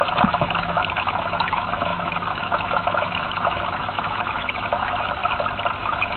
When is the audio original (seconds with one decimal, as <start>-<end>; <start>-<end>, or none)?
5.2-5.8